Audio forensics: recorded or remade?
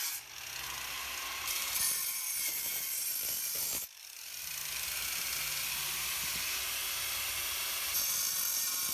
remade